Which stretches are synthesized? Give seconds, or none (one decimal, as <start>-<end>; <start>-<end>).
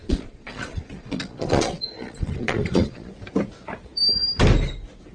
0.0-3.1